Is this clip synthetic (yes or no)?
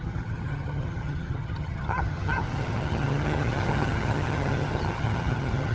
yes